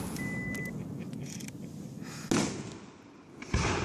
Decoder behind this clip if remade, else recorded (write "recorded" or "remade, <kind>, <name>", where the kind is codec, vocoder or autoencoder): recorded